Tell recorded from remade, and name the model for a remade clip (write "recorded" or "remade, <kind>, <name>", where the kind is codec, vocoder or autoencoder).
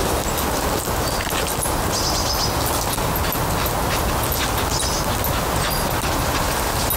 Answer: recorded